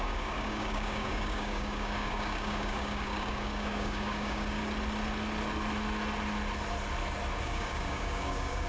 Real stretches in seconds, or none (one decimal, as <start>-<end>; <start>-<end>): 4.6-7.4